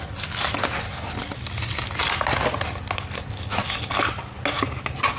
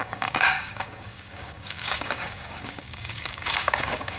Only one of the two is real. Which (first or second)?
first